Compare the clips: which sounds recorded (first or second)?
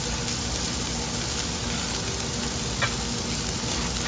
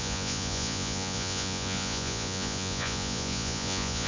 first